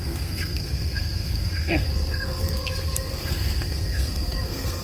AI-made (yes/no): yes